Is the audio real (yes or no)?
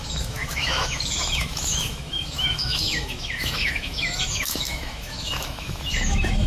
no